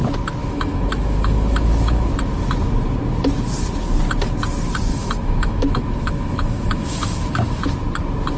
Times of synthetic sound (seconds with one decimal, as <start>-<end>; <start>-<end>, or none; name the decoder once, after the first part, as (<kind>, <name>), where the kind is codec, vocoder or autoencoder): 0.4-2.1 (autoencoder, DAC-VAE); 4.9-7.6